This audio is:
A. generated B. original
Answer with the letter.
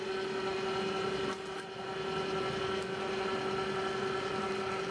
A